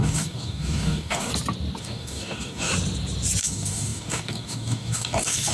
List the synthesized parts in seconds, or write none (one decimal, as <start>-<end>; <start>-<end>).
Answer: 0.0-1.3; 1.8-2.7; 3.4-5.5

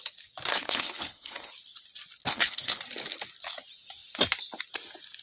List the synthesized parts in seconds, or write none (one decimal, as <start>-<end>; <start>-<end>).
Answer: 0.5-1.5; 2.3-2.8

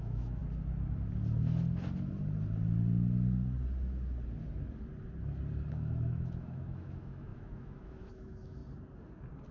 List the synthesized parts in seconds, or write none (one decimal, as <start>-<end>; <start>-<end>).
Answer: 0.0-0.4; 5.7-8.6

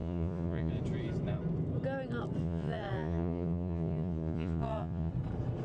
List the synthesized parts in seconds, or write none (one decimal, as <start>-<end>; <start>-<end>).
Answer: 0.0-0.7; 2.4-5.1

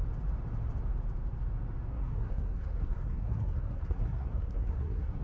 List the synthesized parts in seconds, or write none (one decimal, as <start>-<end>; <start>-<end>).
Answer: 1.9-5.2

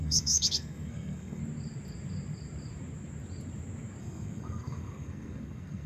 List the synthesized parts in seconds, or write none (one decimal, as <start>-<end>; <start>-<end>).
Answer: 0.0-1.4; 4.0-5.9